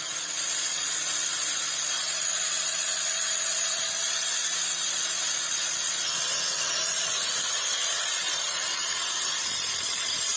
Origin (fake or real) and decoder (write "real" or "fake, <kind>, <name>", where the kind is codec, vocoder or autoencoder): fake, vocoder, Vocos